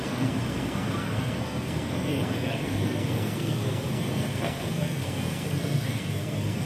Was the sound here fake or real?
fake